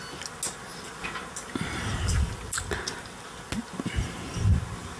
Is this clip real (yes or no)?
yes